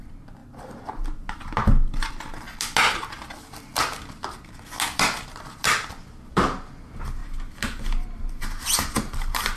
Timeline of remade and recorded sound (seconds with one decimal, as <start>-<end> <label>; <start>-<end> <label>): 0.0-9.6 recorded